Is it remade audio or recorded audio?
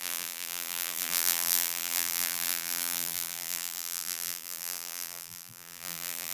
remade